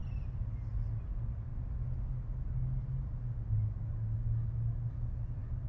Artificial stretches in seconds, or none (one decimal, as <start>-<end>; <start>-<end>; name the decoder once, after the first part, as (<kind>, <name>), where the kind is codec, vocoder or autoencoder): none